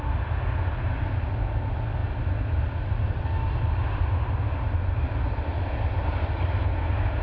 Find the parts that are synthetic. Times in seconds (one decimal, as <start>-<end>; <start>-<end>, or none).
none